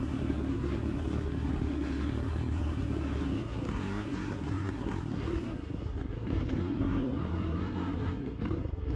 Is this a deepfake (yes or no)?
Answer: yes